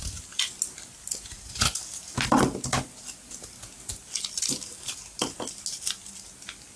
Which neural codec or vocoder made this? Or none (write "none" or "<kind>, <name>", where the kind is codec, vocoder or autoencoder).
none